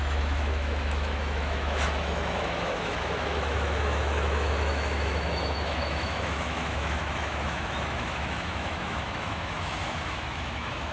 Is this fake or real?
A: fake